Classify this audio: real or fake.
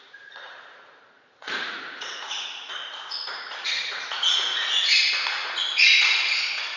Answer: fake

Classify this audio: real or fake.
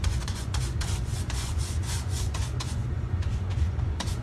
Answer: fake